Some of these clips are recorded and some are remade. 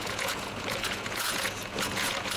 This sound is remade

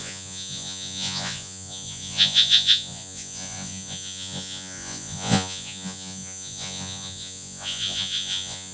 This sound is remade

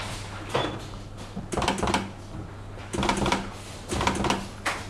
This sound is recorded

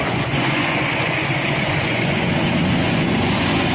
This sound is remade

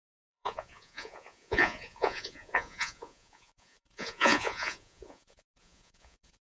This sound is remade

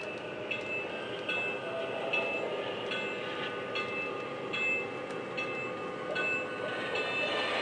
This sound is recorded